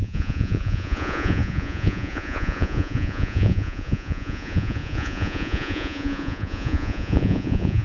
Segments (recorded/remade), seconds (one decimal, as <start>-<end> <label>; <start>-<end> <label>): 0.0-7.8 remade